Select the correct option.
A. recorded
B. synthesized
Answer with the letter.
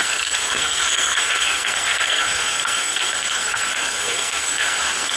B